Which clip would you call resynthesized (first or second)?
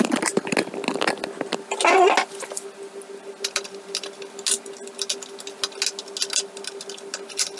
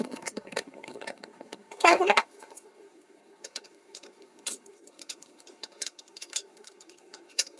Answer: second